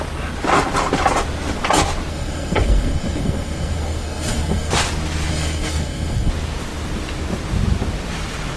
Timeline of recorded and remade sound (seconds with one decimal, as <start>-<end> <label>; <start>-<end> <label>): 0.0-2.1 recorded; 2.1-4.7 remade; 4.7-5.3 recorded; 5.3-6.3 remade; 6.3-8.6 recorded